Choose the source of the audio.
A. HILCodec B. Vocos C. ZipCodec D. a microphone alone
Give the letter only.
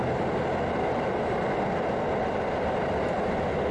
D